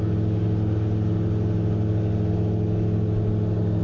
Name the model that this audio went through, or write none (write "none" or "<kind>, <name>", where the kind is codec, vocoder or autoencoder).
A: none